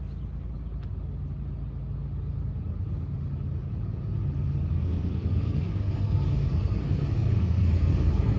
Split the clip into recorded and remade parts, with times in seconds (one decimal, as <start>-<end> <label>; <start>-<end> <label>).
0.0-4.7 recorded; 4.7-8.4 remade